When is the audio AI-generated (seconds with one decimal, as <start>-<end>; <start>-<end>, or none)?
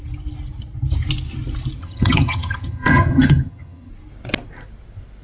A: 1.8-3.9